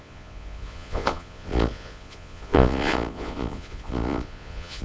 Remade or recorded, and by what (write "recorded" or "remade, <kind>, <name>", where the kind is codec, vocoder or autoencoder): remade, vocoder, Vocos